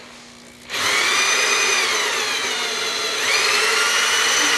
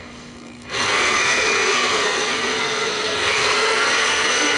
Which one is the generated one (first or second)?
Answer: second